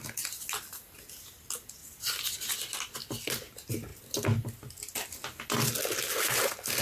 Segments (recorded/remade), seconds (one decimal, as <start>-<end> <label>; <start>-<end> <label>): 0.0-6.8 recorded